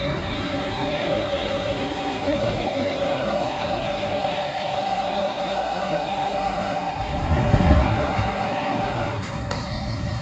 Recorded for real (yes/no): no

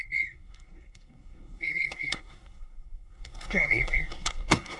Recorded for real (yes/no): no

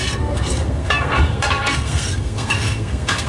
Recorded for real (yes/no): no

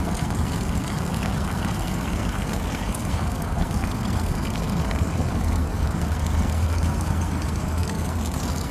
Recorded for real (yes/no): no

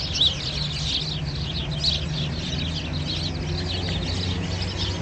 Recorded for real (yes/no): yes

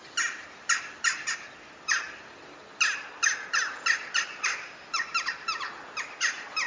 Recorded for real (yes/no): yes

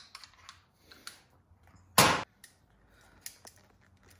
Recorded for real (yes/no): yes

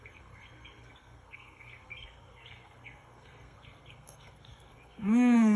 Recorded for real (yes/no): no